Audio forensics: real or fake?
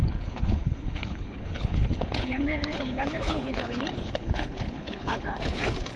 fake